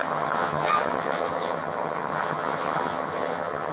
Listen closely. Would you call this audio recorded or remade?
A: remade